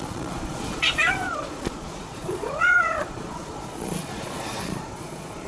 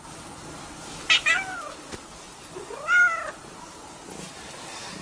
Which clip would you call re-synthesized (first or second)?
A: first